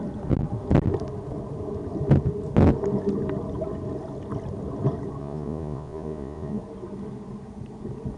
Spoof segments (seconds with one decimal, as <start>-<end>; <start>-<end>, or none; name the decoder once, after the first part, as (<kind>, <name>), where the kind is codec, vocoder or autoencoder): 5.2-6.6 (vocoder, Vocos)